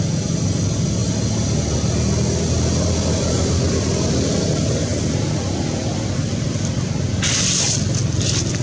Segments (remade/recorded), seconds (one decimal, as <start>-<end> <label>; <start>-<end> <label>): 0.0-8.6 recorded